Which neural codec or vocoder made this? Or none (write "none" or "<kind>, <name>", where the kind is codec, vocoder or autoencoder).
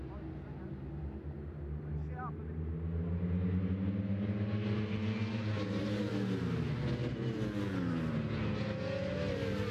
none